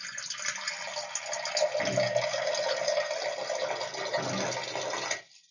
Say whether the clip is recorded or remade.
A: recorded